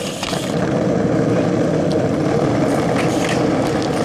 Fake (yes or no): no